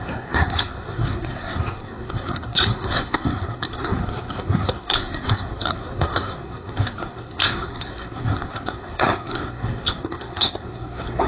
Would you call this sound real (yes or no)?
no